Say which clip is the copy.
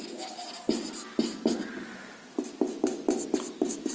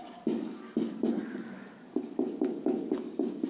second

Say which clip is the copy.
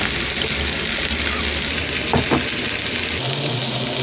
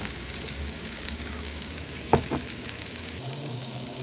second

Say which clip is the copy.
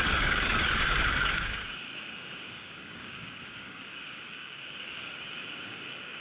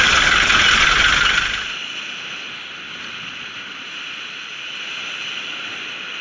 first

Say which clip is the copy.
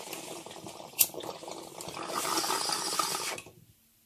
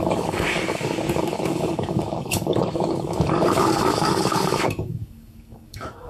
second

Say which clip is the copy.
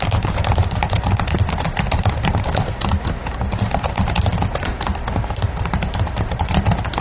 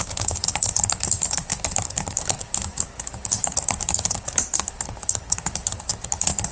second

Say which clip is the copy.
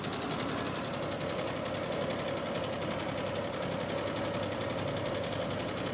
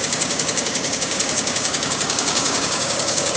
second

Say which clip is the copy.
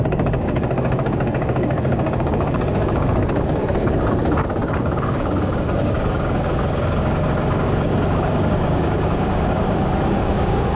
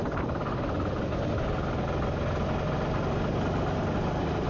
first